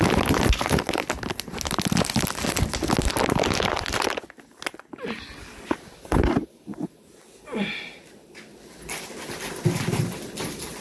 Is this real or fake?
real